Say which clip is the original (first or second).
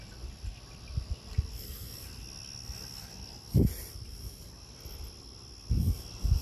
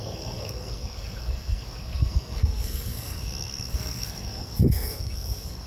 first